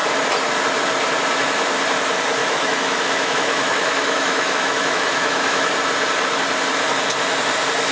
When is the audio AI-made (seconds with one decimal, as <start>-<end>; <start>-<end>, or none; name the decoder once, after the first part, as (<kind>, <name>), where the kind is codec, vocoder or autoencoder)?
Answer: 2.4-5.7 (autoencoder, DAC-VAE)